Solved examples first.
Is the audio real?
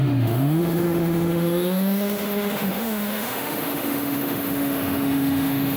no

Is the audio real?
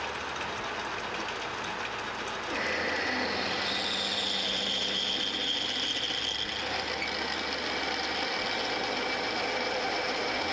yes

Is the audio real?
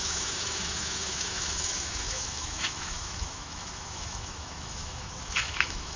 no